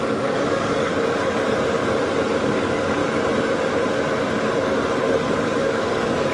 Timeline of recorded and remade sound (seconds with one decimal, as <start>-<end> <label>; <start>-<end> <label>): 0.0-0.9 remade; 0.9-2.4 recorded; 2.4-3.0 remade; 3.0-5.0 recorded; 5.0-6.3 remade